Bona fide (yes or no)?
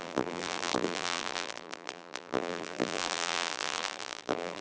no